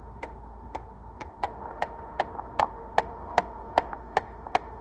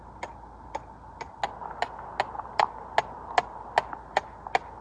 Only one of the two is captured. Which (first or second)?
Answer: second